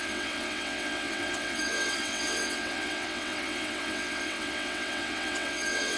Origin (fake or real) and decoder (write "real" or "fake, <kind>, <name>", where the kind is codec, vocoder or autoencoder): fake, vocoder, WaveNeXt